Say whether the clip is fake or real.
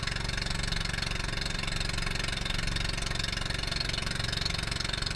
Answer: real